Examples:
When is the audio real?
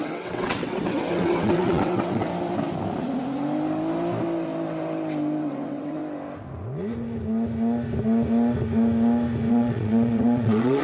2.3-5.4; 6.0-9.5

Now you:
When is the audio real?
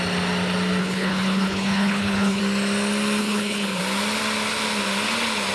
0.0-0.8; 2.4-3.2; 3.8-5.5